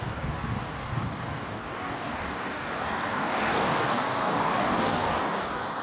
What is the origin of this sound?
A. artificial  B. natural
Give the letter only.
A